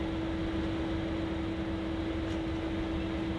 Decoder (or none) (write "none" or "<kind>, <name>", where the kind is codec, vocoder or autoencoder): none